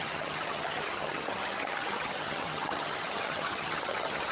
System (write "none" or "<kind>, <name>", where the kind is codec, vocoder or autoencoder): vocoder, HiFi-GAN